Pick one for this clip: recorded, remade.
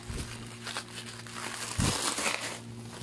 recorded